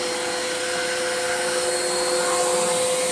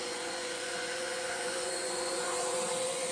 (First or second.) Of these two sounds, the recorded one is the first